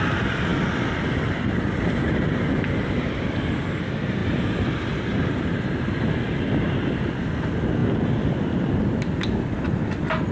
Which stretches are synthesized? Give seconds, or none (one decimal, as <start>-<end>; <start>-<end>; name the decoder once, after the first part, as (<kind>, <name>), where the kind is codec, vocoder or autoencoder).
0.5-2.5 (vocoder, BigVGAN v2); 4.2-6.0; 7.8-8.7